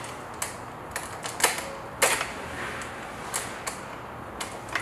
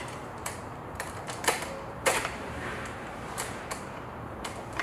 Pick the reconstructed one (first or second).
second